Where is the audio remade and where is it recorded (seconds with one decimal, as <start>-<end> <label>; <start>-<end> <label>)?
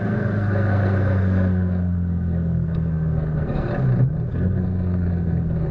0.0-3.7 remade; 3.7-4.3 recorded; 4.3-5.7 remade